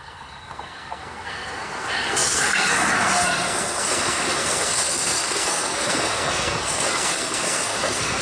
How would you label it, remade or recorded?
remade